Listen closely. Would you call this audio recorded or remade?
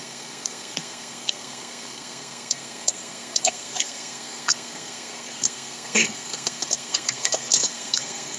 remade